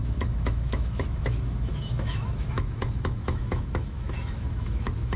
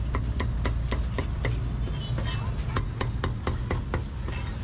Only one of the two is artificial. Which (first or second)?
first